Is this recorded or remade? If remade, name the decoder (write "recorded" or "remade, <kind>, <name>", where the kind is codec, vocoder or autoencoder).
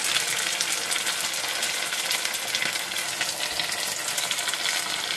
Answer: recorded